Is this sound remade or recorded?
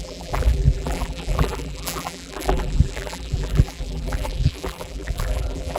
remade